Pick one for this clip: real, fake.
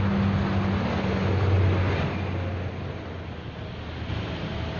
real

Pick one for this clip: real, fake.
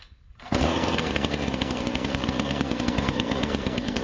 fake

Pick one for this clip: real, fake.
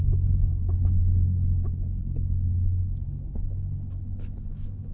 fake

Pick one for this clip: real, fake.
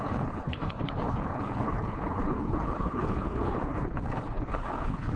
fake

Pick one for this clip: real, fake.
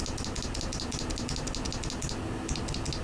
real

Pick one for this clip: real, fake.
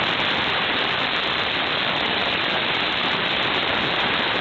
fake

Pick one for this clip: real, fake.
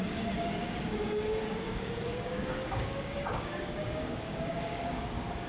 fake